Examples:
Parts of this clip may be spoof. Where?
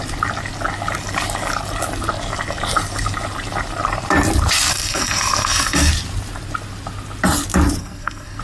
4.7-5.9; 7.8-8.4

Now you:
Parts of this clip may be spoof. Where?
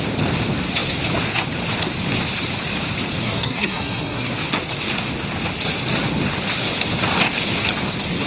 3.2-4.3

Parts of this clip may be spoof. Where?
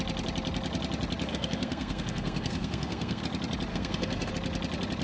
1.3-3.2; 3.7-4.3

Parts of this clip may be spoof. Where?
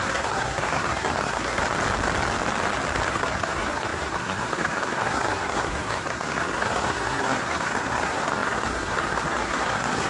0.0-1.6; 3.1-10.1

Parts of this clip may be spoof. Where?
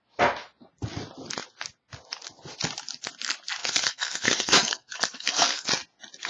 3.6-5.7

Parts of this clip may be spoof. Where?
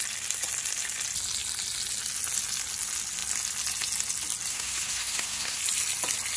4.5-5.6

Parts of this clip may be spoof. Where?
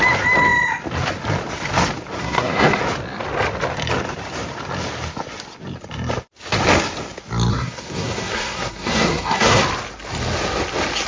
2.2-2.8; 7.5-9.6